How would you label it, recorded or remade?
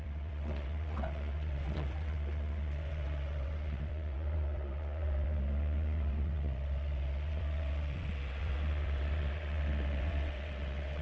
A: remade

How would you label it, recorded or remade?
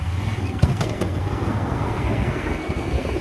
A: remade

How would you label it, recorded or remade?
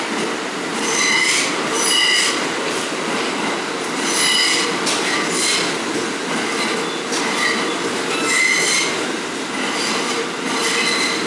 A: recorded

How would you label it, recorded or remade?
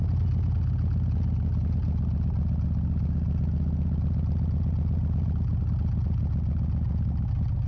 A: recorded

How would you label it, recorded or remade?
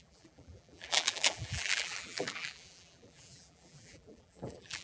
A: remade